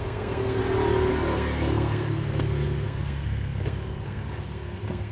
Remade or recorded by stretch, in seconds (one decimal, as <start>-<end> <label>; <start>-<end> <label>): 0.0-0.6 remade; 0.6-1.1 recorded; 1.1-5.1 remade